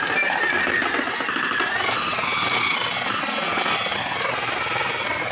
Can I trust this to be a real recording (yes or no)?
yes